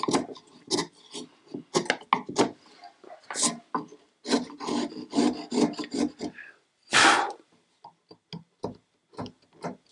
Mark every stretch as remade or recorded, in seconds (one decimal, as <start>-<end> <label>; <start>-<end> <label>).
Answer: 0.0-6.9 recorded; 6.9-7.8 remade; 7.8-9.9 recorded